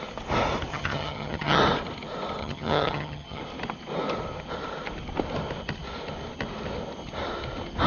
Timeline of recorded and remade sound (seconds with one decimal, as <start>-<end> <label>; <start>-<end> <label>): 0.0-0.7 recorded; 0.7-1.6 remade; 1.6-2.4 recorded; 2.4-3.4 remade; 3.4-7.9 recorded